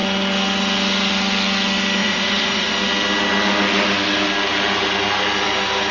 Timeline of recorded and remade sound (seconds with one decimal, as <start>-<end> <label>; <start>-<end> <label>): 0.0-2.0 recorded; 2.0-2.7 remade; 2.7-5.9 recorded